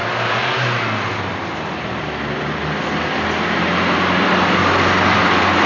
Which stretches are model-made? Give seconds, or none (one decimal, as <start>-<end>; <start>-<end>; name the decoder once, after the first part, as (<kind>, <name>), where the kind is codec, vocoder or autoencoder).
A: 1.7-5.7 (vocoder, BigVGAN v2)